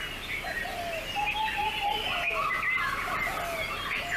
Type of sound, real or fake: real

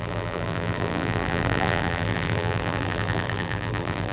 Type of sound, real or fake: fake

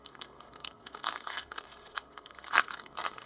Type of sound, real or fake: fake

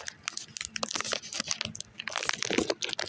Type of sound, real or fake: real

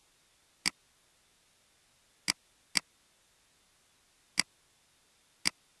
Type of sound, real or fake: real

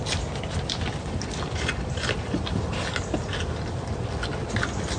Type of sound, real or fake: real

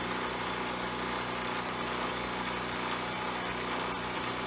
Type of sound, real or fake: real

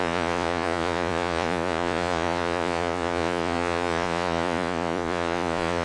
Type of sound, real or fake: fake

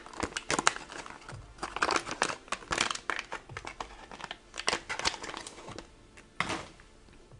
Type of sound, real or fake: real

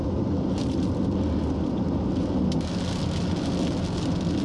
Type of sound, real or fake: real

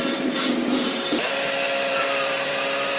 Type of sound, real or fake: fake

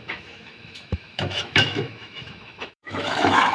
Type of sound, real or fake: fake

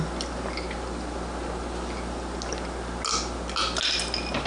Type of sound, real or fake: real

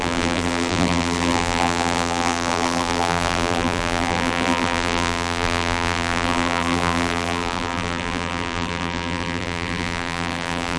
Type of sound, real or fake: fake